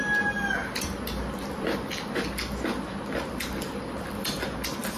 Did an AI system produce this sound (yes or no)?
no